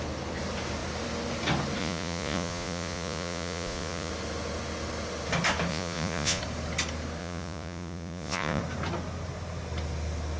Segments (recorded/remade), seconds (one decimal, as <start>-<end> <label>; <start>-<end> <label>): 0.0-1.8 recorded; 1.8-4.1 remade; 4.1-5.7 recorded; 5.7-6.4 remade; 6.4-7.2 recorded; 7.2-8.6 remade; 8.6-10.4 recorded